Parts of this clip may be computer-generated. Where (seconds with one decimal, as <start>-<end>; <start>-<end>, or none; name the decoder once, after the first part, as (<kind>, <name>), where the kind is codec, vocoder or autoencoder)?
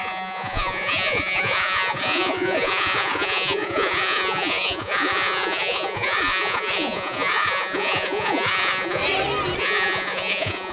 0.0-9.0 (vocoder, Vocos); 9.6-10.7